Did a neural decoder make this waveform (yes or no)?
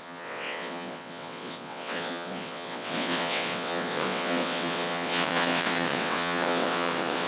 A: yes